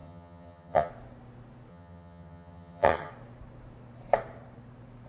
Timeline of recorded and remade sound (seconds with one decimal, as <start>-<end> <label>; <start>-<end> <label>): 0.0-0.9 remade; 0.9-1.7 recorded; 1.7-3.1 remade; 3.1-5.1 recorded